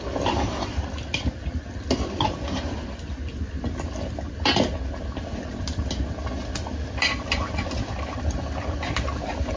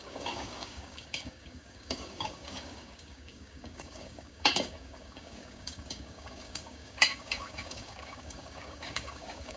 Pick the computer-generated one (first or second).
second